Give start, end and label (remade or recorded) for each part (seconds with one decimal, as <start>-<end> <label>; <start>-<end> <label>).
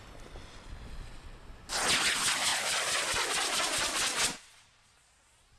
0.0-2.5 recorded; 2.5-4.2 remade; 4.2-5.6 recorded